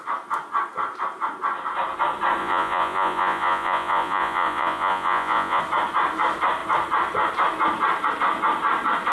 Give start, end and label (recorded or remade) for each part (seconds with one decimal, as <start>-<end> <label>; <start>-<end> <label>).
0.0-2.4 recorded; 2.4-5.6 remade; 5.6-9.1 recorded